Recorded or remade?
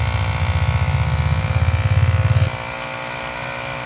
recorded